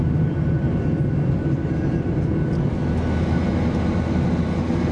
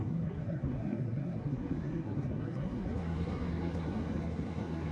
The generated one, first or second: second